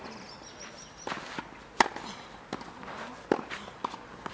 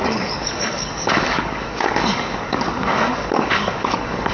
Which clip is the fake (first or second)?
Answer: second